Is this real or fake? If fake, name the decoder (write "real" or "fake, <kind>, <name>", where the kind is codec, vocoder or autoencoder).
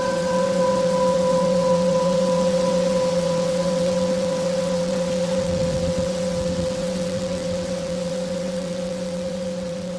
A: fake, vocoder, WaveNeXt